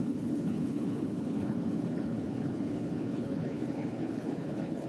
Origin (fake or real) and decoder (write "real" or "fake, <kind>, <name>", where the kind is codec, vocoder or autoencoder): fake, codec, HILCodec